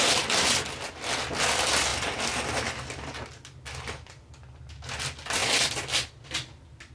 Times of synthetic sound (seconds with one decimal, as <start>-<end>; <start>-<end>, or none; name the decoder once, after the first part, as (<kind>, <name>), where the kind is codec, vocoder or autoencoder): none